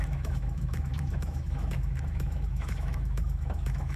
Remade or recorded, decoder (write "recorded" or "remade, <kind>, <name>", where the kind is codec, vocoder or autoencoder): remade, autoencoder, DAC-VAE